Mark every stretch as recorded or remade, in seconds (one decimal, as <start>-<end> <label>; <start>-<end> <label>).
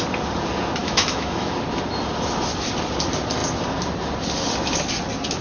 0.0-0.8 recorded; 0.8-1.5 remade; 1.5-5.4 recorded